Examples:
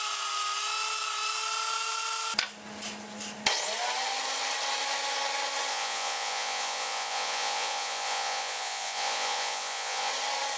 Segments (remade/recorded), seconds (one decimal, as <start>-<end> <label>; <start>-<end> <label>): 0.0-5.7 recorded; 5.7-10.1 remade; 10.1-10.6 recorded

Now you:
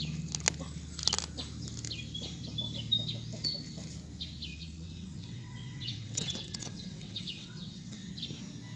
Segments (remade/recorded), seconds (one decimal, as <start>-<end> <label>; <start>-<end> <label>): 0.0-4.5 recorded; 4.5-8.1 remade; 8.1-8.8 recorded

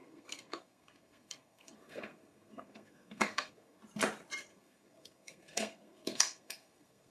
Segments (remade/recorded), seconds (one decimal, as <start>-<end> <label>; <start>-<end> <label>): 0.0-3.8 remade; 3.8-4.5 recorded; 4.5-7.1 remade

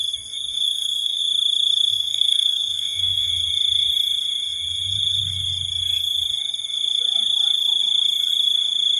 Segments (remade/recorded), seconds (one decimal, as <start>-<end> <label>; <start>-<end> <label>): 0.0-0.5 recorded; 0.5-1.2 remade; 1.2-1.9 recorded; 1.9-3.3 remade; 3.3-9.0 recorded

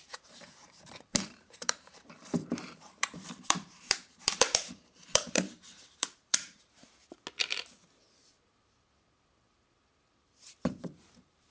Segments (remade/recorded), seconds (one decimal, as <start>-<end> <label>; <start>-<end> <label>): 0.0-7.0 remade; 7.0-10.0 recorded; 10.0-11.5 remade

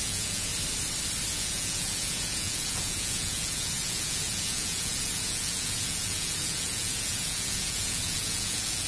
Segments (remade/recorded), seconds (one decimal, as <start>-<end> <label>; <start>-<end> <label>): 0.0-0.5 remade; 0.5-1.3 recorded; 1.3-8.9 remade

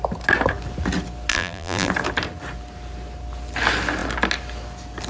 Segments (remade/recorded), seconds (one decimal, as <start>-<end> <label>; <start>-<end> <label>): 0.0-1.3 recorded; 1.3-1.9 remade; 1.9-5.1 recorded

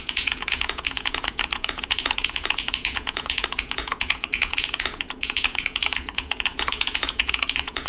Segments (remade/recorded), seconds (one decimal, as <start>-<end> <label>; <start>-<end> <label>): 0.0-7.9 remade